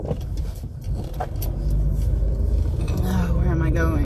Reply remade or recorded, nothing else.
recorded